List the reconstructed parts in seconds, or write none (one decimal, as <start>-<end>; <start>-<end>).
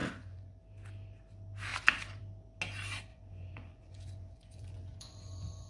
0.0-0.6; 3.1-5.7